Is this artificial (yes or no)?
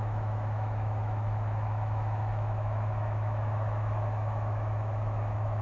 yes